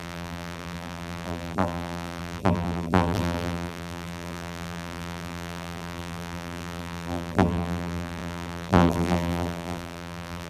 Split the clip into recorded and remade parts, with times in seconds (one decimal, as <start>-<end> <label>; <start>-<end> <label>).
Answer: 0.0-10.5 remade